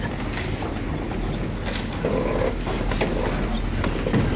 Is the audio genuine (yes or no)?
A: yes